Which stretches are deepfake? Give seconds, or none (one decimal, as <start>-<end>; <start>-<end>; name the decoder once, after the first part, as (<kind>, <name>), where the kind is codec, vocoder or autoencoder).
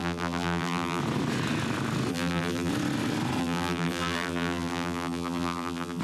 0.0-1.0 (vocoder, BigVGAN v2); 2.1-2.7; 3.4-6.0